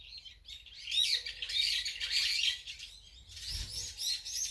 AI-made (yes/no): no